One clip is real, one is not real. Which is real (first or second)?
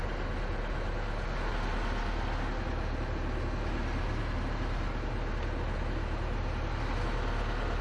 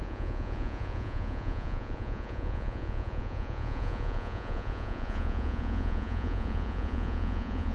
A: first